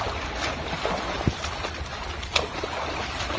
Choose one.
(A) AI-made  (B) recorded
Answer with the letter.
B